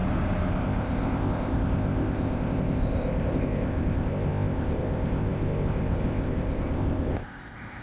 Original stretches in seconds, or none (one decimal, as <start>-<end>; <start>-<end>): 0.0-0.5